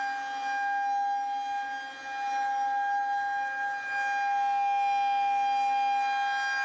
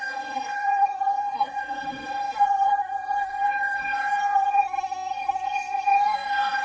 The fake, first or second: second